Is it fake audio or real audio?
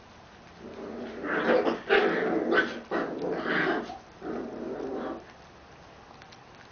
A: real